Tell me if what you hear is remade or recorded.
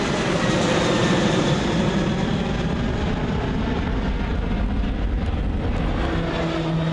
recorded